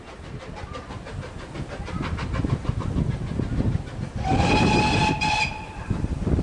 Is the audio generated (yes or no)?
no